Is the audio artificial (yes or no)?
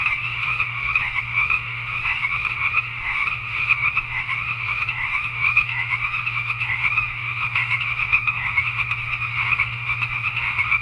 yes